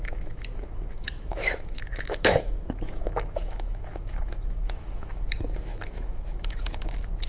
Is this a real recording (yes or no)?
no